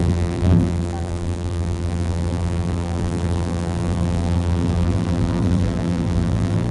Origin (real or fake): fake